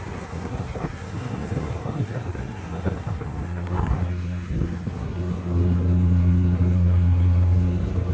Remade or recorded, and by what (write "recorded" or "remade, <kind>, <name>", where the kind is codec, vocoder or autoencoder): remade, codec, SNAC